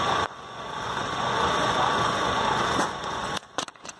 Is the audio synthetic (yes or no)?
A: yes